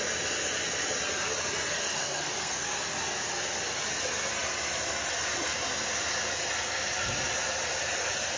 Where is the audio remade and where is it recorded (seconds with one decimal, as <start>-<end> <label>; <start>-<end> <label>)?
0.0-1.7 recorded; 1.7-2.8 remade; 2.8-8.4 recorded